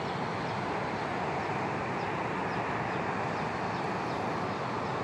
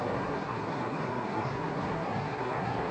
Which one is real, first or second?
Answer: first